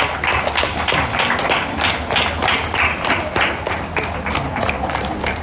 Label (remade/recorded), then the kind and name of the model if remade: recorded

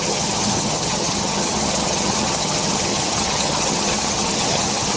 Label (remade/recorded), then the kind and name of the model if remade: remade, vocoder, HiFi-GAN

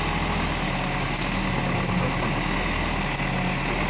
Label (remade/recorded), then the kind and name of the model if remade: recorded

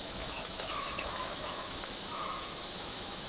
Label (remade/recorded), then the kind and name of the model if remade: remade, autoencoder, DAC-VAE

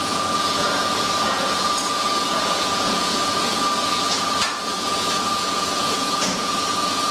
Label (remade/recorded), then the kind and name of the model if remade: remade, vocoder, Vocos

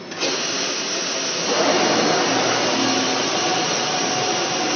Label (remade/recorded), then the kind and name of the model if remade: recorded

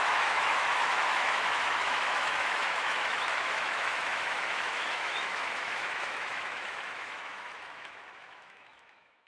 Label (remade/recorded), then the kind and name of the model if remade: remade, autoencoder, DAC-VAE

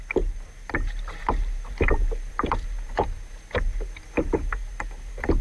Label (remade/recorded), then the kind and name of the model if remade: remade, vocoder, BigVGAN v2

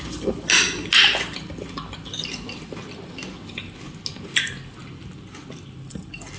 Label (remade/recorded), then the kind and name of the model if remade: recorded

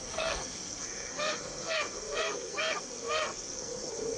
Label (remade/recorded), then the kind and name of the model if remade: remade, codec, SNAC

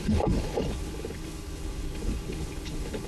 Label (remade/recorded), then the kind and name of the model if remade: remade, codec, HILCodec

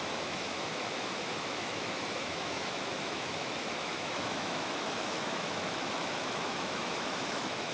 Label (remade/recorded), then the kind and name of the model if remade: remade, autoencoder, DAC-VAE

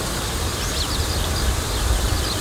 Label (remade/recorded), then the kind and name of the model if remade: recorded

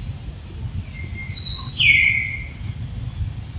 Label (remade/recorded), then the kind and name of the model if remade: recorded